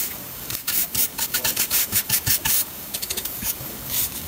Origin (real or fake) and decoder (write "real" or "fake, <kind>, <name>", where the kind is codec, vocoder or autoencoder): fake, codec, DAC